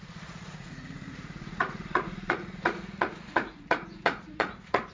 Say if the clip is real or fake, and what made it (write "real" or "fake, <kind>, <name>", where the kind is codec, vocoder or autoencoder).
fake, vocoder, Vocos